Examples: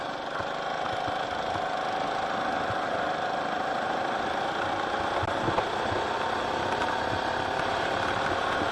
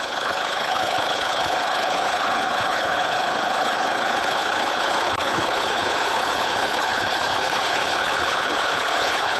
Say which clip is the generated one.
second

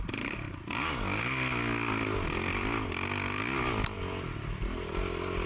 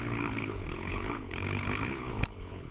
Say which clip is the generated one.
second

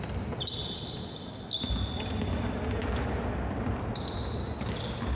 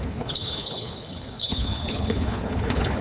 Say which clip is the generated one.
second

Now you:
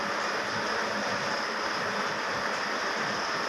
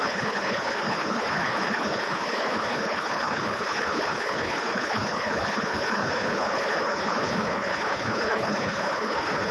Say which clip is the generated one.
second